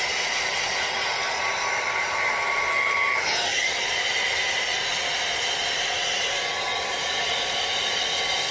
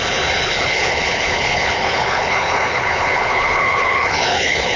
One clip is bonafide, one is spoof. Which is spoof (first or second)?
second